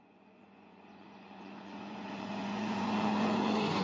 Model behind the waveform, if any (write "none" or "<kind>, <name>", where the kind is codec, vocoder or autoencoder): vocoder, Vocos